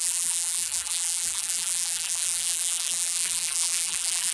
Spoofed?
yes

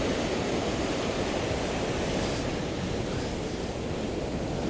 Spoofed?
no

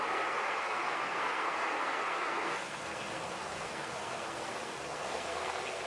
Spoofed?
yes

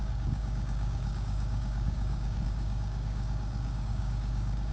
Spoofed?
yes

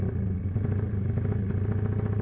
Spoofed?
no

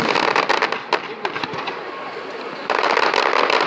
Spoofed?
yes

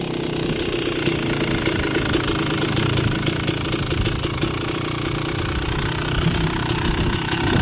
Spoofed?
no